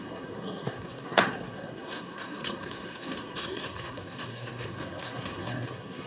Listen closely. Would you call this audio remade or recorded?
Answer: remade